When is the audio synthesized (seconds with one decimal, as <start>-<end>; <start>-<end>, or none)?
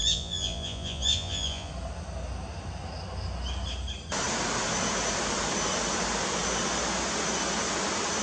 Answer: 0.0-1.7